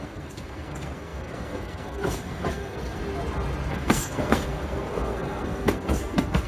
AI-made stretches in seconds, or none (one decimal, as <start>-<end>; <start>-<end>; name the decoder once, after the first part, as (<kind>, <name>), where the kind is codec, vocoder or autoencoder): 0.0-3.0 (codec, SNAC); 3.7-6.5